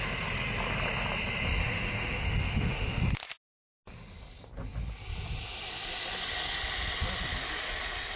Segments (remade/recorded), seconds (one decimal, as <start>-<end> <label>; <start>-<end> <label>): 0.0-1.6 recorded; 1.6-3.0 remade; 3.0-8.2 recorded